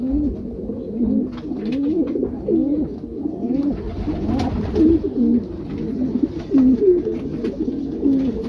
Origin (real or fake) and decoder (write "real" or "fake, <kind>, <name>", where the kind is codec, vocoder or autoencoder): real